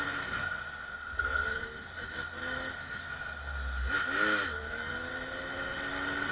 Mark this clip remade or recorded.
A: recorded